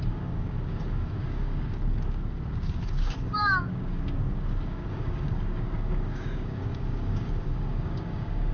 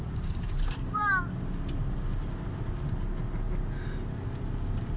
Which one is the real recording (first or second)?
second